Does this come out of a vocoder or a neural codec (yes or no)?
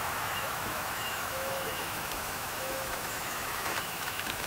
yes